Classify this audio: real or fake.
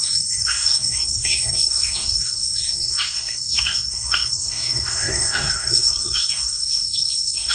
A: fake